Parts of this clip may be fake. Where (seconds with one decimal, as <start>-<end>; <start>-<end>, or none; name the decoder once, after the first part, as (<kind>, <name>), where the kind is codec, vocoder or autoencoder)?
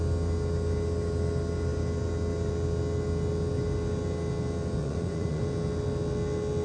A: 4.8-5.4 (vocoder, Vocos)